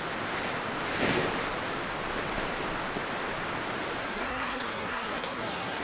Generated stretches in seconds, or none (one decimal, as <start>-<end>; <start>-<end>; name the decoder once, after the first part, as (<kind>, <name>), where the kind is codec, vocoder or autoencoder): 4.0-5.8 (codec, SNAC)